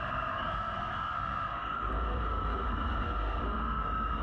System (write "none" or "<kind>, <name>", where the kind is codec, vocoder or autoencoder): codec, SNAC